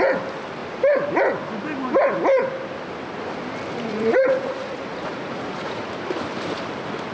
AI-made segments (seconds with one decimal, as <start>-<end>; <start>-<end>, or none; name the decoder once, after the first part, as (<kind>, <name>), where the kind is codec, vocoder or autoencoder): 3.9-5.9 (vocoder, Vocos)